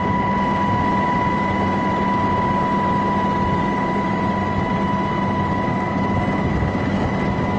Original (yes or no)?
yes